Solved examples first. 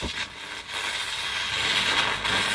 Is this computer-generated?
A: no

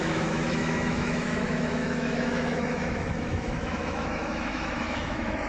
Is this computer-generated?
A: yes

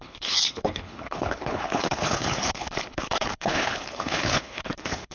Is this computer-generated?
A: yes